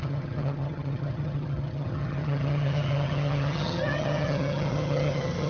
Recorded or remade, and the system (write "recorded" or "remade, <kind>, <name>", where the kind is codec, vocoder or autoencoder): remade, vocoder, HiFi-GAN